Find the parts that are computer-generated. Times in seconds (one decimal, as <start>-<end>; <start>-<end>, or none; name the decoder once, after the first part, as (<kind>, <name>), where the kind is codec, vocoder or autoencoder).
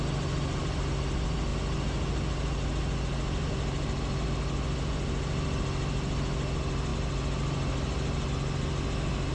none